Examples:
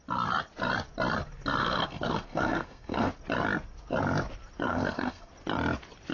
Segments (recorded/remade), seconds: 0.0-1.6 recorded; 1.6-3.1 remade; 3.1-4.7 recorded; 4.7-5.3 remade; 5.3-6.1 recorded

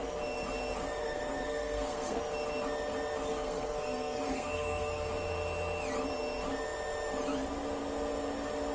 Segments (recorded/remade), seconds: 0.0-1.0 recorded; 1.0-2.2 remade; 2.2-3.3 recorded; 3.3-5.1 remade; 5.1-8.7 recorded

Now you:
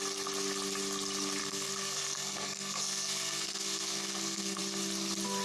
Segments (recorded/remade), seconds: 0.0-1.4 recorded; 1.4-4.6 remade; 4.6-5.4 recorded